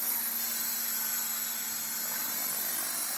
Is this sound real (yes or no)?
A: yes